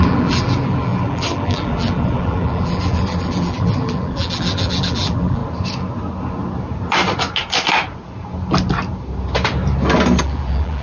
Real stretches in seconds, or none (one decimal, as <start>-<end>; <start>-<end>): 5.4-10.2